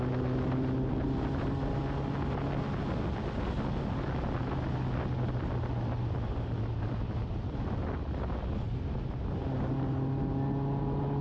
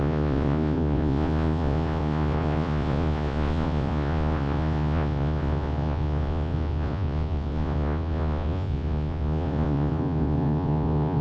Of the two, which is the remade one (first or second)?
second